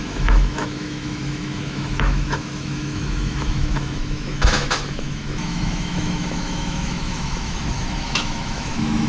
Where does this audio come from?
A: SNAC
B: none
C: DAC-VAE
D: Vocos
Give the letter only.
C